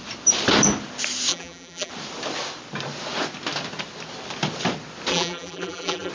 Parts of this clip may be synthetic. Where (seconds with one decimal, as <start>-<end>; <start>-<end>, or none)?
1.3-1.9; 5.1-6.1